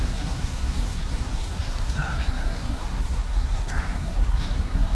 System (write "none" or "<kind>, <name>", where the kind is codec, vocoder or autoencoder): codec, SNAC